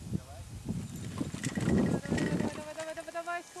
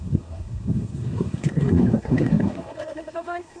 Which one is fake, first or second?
second